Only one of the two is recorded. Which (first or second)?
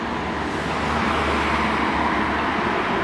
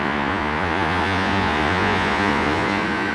first